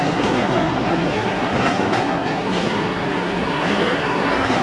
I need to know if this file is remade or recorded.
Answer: remade